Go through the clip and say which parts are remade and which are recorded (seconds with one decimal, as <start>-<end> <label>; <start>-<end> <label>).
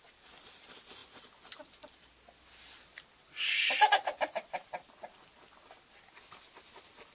0.0-7.1 recorded